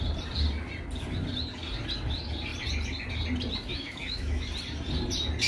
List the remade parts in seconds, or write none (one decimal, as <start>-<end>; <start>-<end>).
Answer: 3.7-4.5